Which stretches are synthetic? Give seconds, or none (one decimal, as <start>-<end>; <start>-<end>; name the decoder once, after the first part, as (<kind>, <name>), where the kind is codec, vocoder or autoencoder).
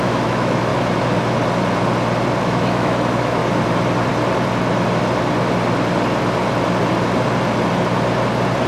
0.0-0.7 (autoencoder, DAC-VAE); 2.4-3.4